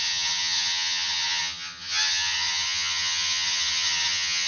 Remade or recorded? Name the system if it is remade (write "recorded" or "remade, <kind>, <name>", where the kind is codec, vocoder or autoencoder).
remade, vocoder, HiFi-GAN